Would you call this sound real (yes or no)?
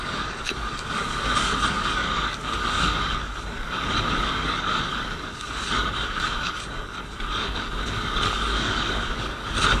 no